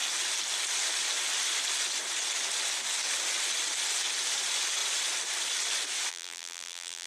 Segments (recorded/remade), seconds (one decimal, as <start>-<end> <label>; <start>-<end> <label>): 0.0-6.1 recorded; 6.1-7.1 remade